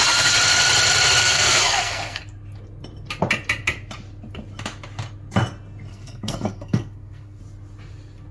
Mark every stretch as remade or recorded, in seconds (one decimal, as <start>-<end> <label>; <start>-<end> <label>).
0.0-1.2 recorded; 1.2-2.2 remade; 2.2-5.9 recorded; 5.9-7.4 remade; 7.4-8.3 recorded